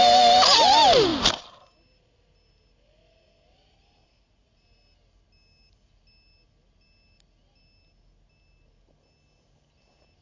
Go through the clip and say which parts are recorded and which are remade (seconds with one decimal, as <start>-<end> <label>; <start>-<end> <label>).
0.0-10.2 recorded